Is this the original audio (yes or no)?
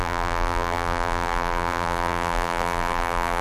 no